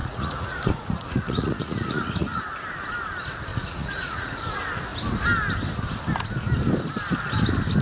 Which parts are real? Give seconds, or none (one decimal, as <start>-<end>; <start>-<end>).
2.4-3.5; 4.4-7.8